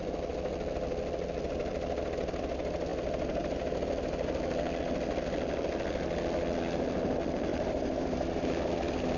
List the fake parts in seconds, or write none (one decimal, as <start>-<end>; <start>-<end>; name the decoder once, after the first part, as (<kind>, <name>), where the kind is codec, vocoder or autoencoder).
7.5-8.5 (vocoder, BigVGAN v2)

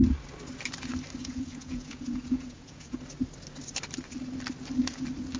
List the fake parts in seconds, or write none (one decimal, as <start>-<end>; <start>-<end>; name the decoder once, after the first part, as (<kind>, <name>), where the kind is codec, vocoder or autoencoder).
1.2-3.0 (vocoder, Vocos)

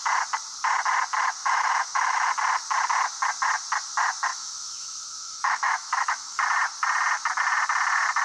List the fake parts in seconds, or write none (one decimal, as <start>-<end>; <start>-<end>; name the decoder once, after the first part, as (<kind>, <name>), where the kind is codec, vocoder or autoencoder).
1.4-2.3 (autoencoder, DAC-VAE); 4.3-6.4

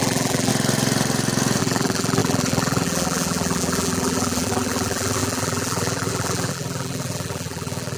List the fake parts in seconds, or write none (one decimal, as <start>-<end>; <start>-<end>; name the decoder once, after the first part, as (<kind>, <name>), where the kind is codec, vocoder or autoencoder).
0.0-0.5 (vocoder, BigVGAN v2); 1.6-8.0

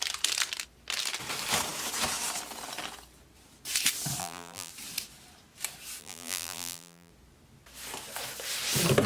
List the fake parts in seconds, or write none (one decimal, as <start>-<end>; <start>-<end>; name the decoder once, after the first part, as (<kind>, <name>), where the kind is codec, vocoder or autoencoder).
4.2-4.7 (vocoder, BigVGAN v2); 6.0-7.1

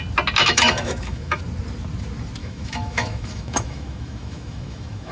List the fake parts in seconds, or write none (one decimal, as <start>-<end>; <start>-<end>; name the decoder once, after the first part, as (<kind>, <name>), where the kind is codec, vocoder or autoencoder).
0.4-1.4 (autoencoder, DAC-VAE); 2.4-5.1